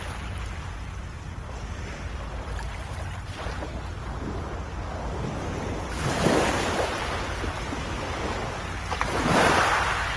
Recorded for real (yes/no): yes